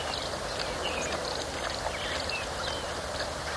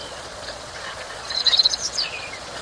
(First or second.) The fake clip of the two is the second